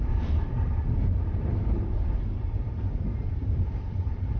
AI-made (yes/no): yes